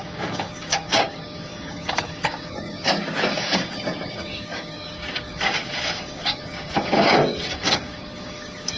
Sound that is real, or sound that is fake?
fake